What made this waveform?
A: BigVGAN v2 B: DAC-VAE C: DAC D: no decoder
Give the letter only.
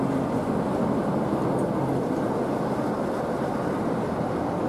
D